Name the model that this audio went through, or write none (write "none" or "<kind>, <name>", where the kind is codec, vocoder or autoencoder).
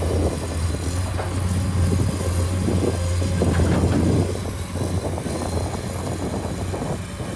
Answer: none